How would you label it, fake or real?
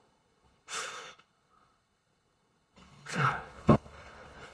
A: fake